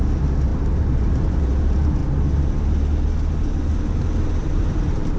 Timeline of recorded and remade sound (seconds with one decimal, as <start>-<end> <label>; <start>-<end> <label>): 0.0-2.0 remade; 2.0-5.2 recorded